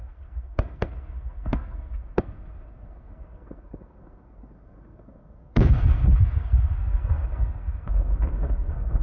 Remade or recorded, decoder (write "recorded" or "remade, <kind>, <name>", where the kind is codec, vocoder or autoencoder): remade, codec, SNAC